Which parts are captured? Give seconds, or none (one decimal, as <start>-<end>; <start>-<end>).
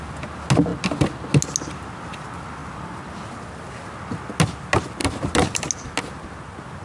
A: 0.0-0.7; 1.2-2.6; 3.4-5.0; 5.7-6.8